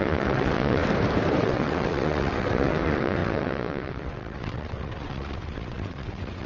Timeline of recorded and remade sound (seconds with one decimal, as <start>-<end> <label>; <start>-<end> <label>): 0.0-0.8 remade; 0.8-1.4 recorded; 1.4-6.5 remade